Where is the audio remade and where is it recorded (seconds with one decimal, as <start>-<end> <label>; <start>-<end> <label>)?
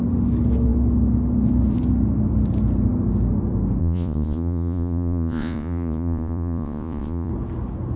0.0-3.8 recorded; 3.8-7.3 remade; 7.3-8.0 recorded